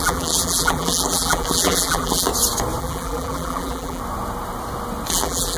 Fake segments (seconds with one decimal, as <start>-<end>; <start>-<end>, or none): 0.0-2.3; 2.8-4.0; 5.1-5.6

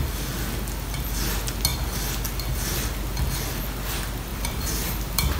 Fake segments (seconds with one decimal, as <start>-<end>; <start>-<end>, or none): 4.3-5.4

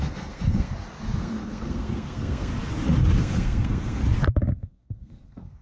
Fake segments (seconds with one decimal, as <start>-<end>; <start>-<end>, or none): 0.0-0.7; 1.2-2.5; 3.2-4.0; 4.5-5.6

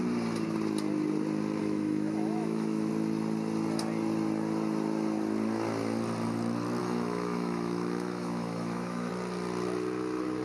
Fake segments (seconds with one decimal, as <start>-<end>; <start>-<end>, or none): 1.6-2.9; 6.8-9.1

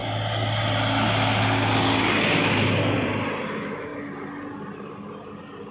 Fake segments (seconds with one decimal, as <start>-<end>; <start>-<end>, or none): 3.4-3.9

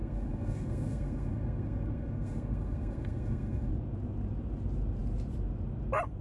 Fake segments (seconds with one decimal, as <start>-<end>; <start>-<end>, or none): 0.0-3.7

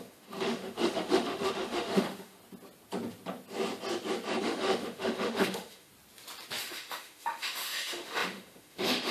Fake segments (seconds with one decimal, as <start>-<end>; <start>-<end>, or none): 0.0-2.4; 4.4-5.9; 6.6-9.1

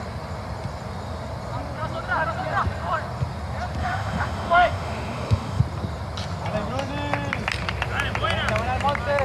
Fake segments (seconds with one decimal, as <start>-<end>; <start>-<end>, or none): 3.8-5.6